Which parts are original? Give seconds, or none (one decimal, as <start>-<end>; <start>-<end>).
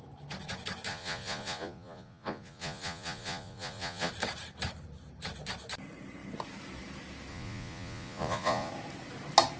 0.0-0.9; 4.1-7.3; 8.7-9.6